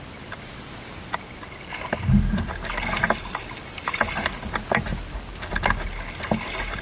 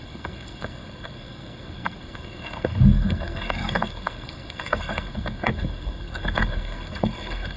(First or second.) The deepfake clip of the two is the second